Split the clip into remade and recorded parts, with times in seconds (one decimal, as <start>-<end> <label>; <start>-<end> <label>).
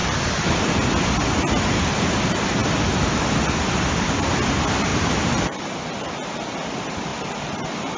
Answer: 0.0-4.9 recorded; 4.9-6.0 remade; 6.0-8.0 recorded